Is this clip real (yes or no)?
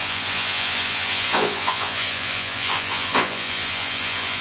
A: no